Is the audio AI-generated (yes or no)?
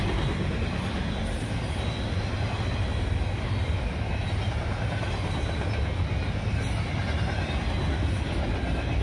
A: no